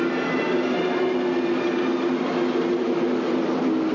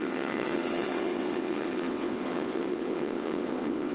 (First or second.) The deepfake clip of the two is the second